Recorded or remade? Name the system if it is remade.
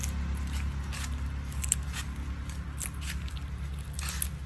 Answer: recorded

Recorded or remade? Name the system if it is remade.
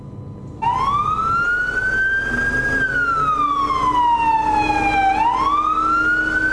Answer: recorded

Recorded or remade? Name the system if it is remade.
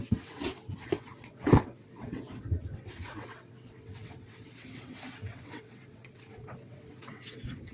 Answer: remade, vocoder, WaveNeXt